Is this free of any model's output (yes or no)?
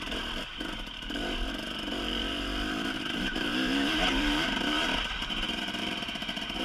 no